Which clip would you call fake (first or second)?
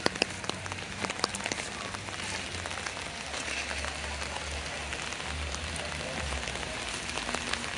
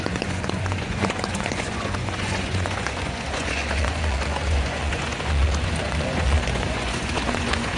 second